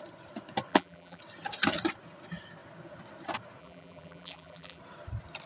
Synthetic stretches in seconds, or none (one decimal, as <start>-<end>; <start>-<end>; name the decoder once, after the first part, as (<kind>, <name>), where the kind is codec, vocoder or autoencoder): 0.7-1.2 (vocoder, BigVGAN v2); 3.6-4.8